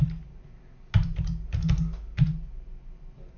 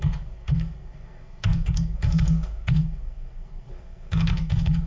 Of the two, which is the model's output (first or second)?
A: second